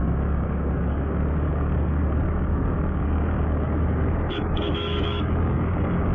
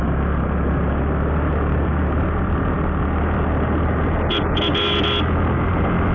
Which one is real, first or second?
second